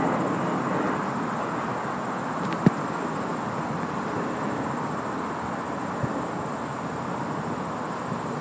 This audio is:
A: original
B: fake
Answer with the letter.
A